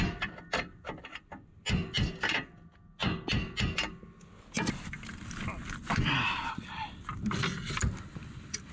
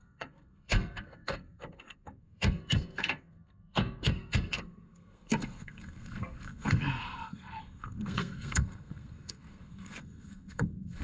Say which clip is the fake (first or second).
second